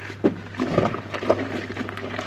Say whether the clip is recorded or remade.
recorded